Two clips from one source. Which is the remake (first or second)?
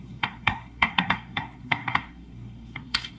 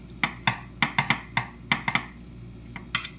first